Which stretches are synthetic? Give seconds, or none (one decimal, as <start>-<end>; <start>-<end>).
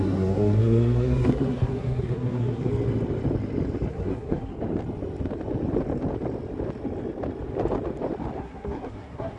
0.0-2.7; 3.9-4.5; 8.4-9.4